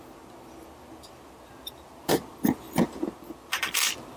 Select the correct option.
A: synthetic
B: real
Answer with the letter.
A